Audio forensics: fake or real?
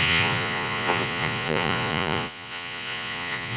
fake